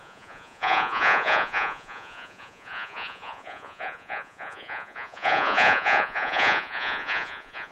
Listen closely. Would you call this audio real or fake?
fake